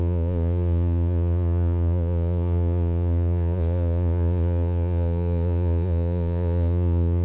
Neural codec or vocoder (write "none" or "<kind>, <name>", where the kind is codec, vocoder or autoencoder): vocoder, Vocos